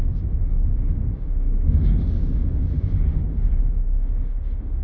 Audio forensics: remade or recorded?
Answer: remade